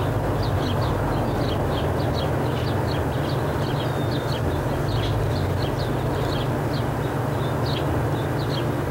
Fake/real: real